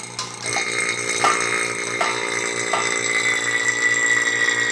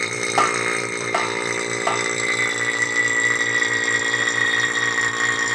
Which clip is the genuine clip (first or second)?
first